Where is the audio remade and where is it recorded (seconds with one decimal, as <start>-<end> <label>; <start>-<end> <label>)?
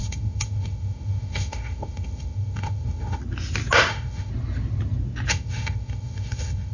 0.0-3.2 remade; 3.2-3.9 recorded; 3.9-4.3 remade; 4.3-5.3 recorded; 5.3-6.7 remade